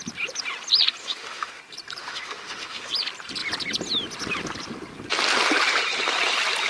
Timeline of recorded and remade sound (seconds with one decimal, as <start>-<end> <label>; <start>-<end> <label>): 0.0-1.0 recorded; 1.0-1.6 remade; 1.6-2.0 recorded; 2.0-2.9 remade; 2.9-6.7 recorded